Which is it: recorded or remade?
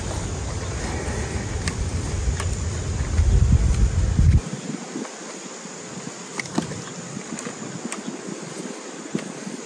recorded